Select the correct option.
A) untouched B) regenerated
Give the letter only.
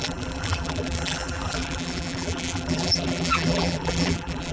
B